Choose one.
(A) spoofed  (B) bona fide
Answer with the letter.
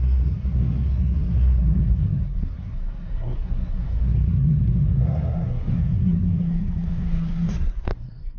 A